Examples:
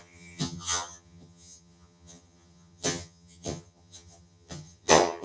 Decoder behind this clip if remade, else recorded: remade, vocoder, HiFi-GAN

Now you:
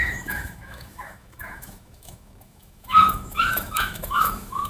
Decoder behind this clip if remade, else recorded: remade, autoencoder, DAC-VAE